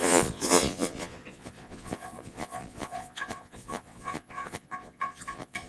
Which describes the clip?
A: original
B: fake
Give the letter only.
B